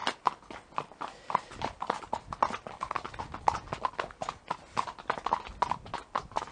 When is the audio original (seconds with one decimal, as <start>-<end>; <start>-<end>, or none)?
0.0-6.5